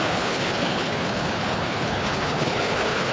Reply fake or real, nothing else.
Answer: fake